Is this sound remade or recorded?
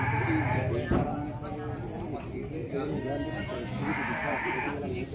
recorded